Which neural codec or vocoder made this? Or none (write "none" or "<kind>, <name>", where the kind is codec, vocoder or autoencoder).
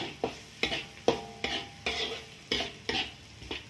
none